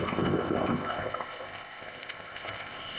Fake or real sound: fake